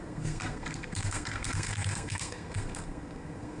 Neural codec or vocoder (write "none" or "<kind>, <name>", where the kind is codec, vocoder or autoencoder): codec, SNAC